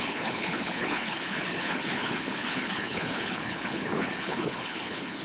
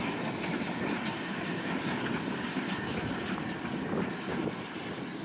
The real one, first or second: second